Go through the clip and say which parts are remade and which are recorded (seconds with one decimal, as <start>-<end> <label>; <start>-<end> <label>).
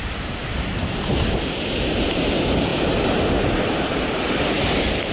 0.0-5.1 remade